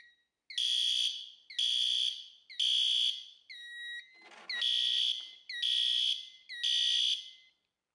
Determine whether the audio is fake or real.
real